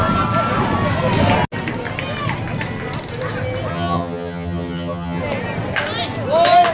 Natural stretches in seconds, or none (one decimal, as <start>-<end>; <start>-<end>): 0.0-3.7; 5.2-6.7